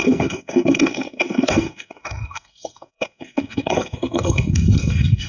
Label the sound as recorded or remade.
remade